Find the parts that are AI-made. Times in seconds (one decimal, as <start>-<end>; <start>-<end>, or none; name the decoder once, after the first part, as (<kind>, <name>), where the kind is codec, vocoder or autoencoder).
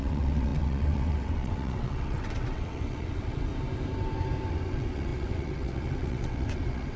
0.0-3.5 (vocoder, WaveNeXt); 4.5-7.0